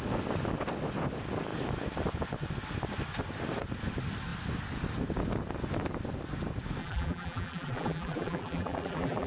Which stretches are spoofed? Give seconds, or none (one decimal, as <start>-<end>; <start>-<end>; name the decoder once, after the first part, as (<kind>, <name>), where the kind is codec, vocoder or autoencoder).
6.8-9.3 (vocoder, BigVGAN v2)